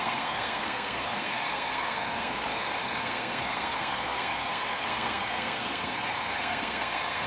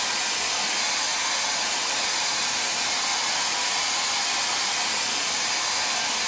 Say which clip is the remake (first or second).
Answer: first